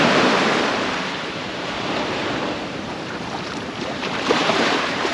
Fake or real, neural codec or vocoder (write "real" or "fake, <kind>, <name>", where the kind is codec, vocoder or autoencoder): fake, vocoder, BigVGAN v2